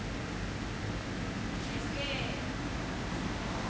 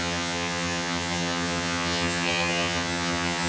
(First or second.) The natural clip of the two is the first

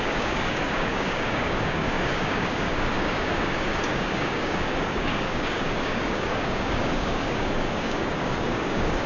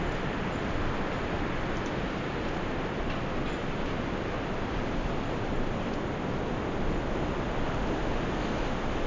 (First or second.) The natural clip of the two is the second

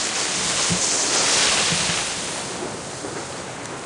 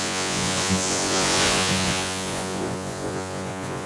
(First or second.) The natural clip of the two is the first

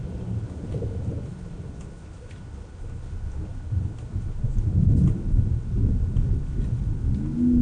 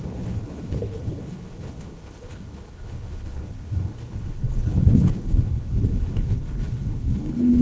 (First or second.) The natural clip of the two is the first